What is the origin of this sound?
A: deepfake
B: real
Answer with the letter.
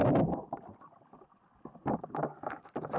B